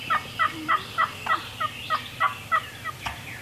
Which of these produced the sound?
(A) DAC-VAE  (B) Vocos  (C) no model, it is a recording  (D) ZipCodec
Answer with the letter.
C